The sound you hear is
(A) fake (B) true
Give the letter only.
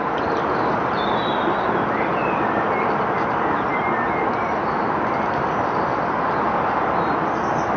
B